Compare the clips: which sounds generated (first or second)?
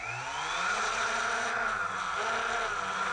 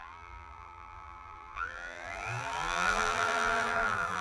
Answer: second